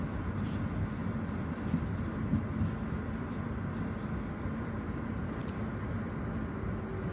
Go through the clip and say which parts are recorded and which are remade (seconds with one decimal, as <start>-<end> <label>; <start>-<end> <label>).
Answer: 0.0-7.1 recorded